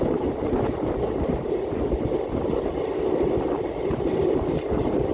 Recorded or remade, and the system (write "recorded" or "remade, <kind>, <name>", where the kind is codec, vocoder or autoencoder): recorded